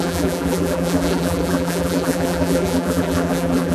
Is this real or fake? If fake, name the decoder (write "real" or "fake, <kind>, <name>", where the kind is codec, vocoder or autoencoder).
fake, vocoder, BigVGAN v2